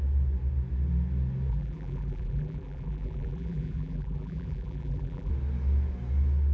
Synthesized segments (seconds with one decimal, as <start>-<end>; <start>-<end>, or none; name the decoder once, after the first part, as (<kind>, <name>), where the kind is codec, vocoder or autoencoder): 1.5-5.3 (vocoder, BigVGAN v2)